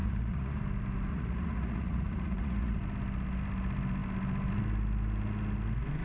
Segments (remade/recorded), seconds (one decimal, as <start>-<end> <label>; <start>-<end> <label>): 0.0-0.6 remade; 0.6-1.1 recorded; 1.1-2.8 remade; 2.8-6.0 recorded